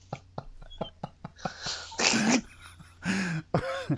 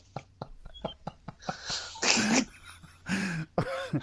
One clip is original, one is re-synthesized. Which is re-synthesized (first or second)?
second